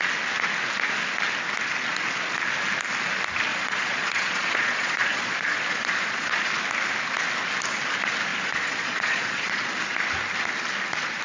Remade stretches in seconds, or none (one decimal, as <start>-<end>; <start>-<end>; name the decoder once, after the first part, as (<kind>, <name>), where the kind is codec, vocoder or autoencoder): 3.5-6.5 (vocoder, Vocos); 8.3-9.6

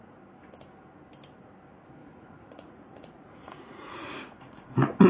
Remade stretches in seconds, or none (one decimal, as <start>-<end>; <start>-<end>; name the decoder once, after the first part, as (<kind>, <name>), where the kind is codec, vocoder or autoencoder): 2.0-5.1 (vocoder, Vocos)

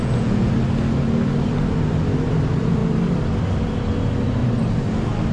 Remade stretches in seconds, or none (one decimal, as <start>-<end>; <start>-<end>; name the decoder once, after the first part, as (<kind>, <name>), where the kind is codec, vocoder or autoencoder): 0.0-0.5 (vocoder, Vocos)

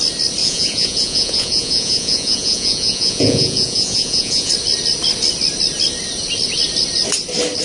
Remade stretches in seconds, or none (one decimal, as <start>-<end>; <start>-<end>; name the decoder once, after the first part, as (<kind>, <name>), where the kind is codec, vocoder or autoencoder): 0.4-4.5 (vocoder, Vocos)

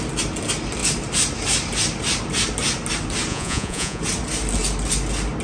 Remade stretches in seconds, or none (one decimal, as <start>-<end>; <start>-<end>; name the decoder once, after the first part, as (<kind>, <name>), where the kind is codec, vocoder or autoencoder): 3.3-4.0 (vocoder, Vocos)

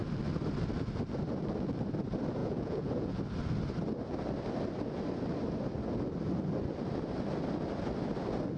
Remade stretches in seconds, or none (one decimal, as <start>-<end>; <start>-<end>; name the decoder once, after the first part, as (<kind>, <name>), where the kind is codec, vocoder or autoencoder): 2.4-3.2 (vocoder, Vocos)